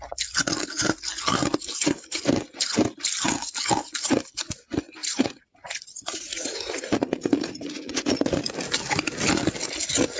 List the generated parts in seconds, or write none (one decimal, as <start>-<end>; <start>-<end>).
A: 5.0-8.4